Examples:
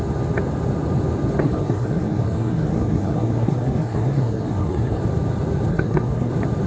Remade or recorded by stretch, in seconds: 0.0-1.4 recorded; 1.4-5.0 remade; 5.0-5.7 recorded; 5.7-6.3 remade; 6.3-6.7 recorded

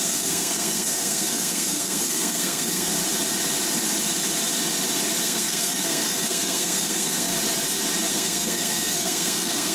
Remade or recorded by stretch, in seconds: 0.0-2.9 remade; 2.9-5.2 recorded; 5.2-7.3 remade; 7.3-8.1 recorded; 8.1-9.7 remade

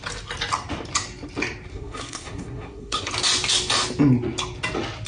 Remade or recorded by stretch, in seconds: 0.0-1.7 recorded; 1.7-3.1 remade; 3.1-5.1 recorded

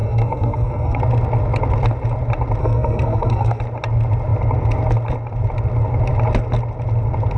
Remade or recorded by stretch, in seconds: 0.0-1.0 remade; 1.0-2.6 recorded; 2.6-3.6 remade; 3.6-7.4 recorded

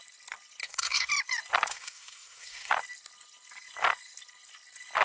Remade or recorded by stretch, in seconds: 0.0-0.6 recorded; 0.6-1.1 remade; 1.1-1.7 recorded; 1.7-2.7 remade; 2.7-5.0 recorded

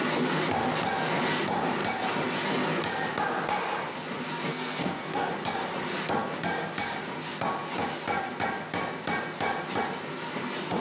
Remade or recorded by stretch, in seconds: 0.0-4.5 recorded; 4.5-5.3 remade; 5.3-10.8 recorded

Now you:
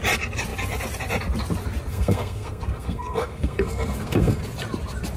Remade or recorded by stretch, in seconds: 0.0-1.9 recorded; 1.9-4.4 remade; 4.4-5.2 recorded